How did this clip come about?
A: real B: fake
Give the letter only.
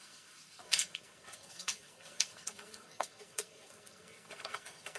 B